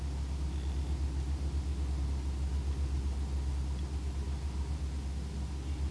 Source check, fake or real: real